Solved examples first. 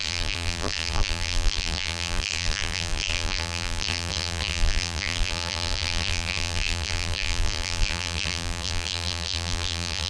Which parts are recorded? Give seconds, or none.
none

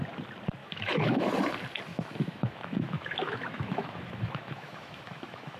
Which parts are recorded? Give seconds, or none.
0.0-0.6; 1.3-1.9

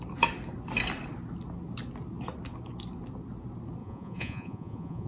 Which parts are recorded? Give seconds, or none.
0.0-3.8

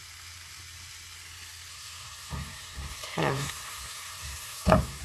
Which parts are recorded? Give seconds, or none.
0.0-1.7

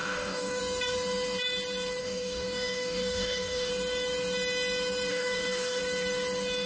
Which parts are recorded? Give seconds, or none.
0.6-2.0; 3.7-5.1; 5.8-6.7

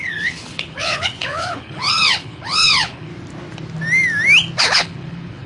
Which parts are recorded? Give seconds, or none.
3.1-4.6

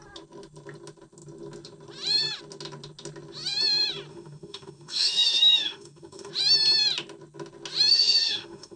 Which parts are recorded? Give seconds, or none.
0.0-4.1; 6.3-7.9

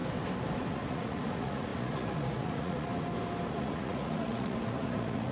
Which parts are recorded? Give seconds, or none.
0.0-0.7; 2.9-3.5